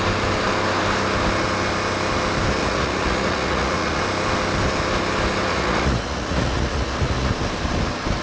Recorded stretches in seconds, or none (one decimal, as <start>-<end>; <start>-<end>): 0.0-2.6; 4.0-5.5; 7.3-8.2